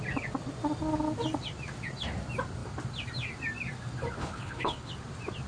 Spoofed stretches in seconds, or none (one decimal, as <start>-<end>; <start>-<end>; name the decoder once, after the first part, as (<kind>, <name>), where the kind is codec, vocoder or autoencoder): 4.2-4.9 (codec, HILCodec)